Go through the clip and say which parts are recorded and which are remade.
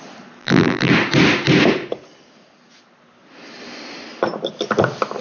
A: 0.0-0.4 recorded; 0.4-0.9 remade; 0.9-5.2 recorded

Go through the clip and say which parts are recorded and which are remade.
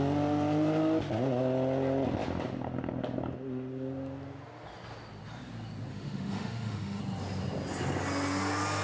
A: 0.0-5.9 recorded; 5.9-7.0 remade; 7.0-8.8 recorded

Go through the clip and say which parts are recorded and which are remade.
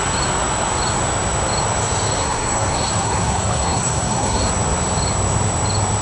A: 0.0-2.1 recorded; 2.1-4.5 remade; 4.5-6.0 recorded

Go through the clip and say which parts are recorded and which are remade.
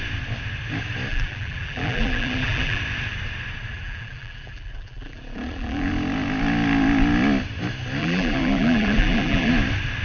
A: 0.0-1.1 recorded; 1.1-2.8 remade; 2.8-3.7 recorded; 3.7-5.9 remade; 5.9-8.0 recorded; 8.0-9.5 remade; 9.5-10.0 recorded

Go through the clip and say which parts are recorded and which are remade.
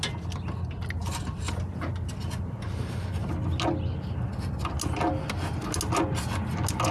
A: 0.0-6.9 recorded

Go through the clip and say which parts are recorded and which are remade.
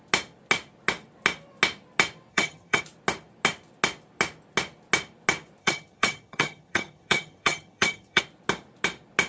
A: 0.0-2.3 recorded; 2.3-2.8 remade; 2.8-5.6 recorded; 5.6-8.2 remade; 8.2-9.3 recorded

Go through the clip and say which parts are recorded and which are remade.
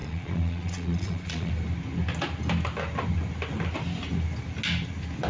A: 0.0-1.5 remade; 1.5-5.3 recorded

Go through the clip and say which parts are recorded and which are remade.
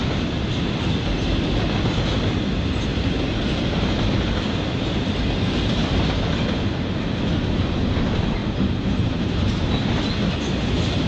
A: 0.0-2.9 recorded; 2.9-5.2 remade; 5.2-8.4 recorded; 8.4-9.7 remade; 9.7-11.1 recorded